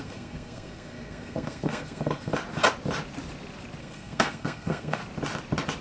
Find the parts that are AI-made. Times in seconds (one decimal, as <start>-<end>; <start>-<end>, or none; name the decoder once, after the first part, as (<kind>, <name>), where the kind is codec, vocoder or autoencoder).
0.0-2.3 (codec, SNAC); 3.8-5.0